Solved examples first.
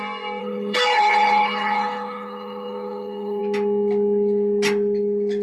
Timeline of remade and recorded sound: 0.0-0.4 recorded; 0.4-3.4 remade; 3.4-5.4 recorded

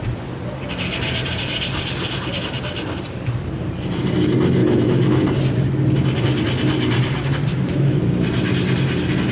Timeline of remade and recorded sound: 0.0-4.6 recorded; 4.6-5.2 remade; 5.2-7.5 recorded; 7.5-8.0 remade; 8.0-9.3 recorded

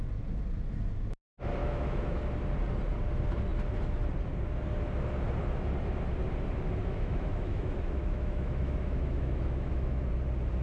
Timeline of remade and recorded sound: 0.0-1.6 recorded; 1.6-2.2 remade; 2.2-6.8 recorded; 6.8-10.1 remade; 10.1-10.6 recorded

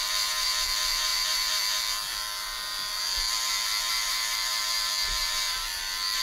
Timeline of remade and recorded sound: 0.0-6.2 remade

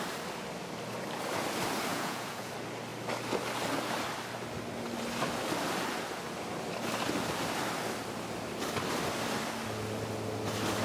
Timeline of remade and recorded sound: 0.0-1.9 recorded; 1.9-2.5 remade; 2.5-10.8 recorded

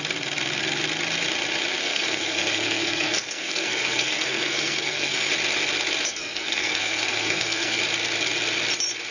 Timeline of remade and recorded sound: 0.0-1.8 recorded; 1.8-5.3 remade; 5.3-6.1 recorded; 6.1-7.8 remade; 7.8-9.1 recorded

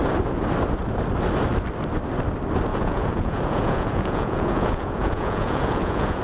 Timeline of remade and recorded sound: 0.0-2.7 recorded; 2.7-6.2 remade

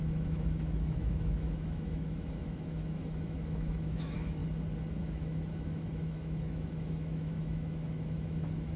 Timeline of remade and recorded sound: 0.0-4.4 remade; 4.4-5.0 recorded; 5.0-8.8 remade